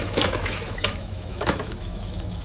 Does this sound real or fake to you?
fake